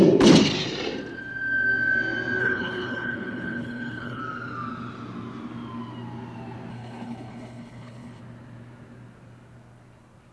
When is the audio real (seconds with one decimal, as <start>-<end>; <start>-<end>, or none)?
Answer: 0.0-2.4; 4.2-6.7; 8.2-10.3